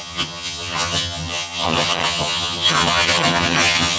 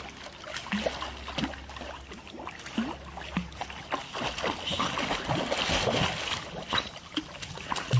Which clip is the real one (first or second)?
second